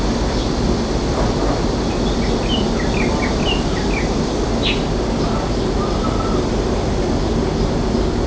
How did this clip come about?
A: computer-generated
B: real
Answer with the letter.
B